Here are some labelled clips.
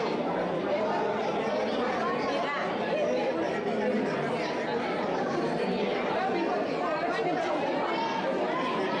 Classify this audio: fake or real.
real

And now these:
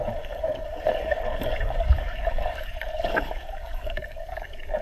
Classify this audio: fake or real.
fake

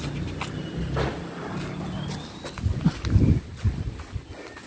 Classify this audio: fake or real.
real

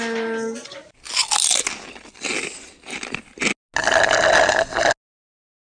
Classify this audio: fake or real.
real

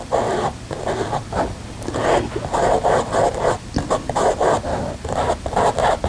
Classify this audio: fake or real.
real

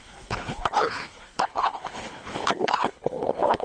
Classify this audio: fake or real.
fake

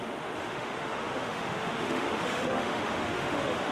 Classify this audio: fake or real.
fake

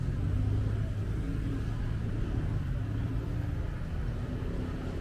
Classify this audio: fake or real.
real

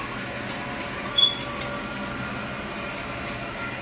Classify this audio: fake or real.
real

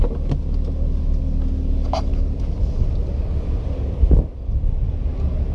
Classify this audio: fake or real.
real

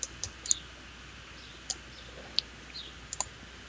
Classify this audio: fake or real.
real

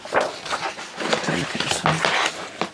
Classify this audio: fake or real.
real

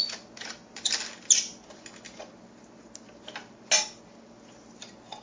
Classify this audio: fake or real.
real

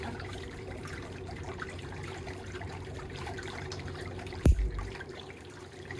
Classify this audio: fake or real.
fake